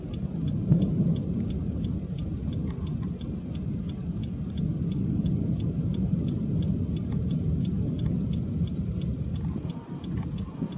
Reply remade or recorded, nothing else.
recorded